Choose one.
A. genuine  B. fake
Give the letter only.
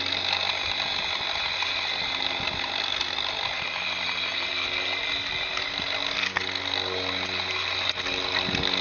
A